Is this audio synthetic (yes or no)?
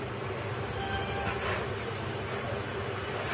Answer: no